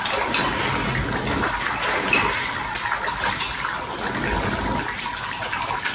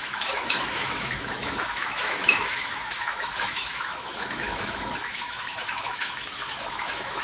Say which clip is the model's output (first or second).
second